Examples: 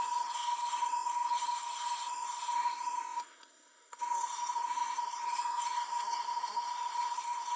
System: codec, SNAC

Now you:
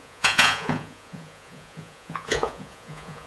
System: vocoder, Vocos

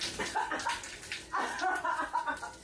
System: none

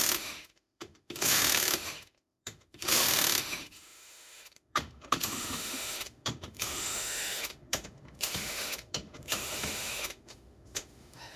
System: autoencoder, DAC-VAE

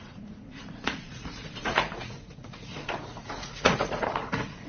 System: vocoder, Vocos